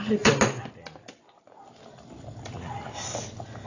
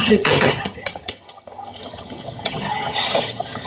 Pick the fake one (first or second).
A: second